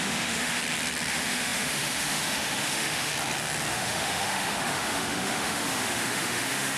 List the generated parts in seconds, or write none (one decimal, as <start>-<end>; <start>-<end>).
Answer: 0.0-0.6; 1.1-3.1; 3.7-6.8